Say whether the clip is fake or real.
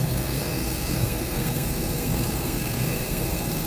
fake